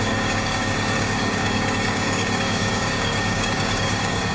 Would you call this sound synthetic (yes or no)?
yes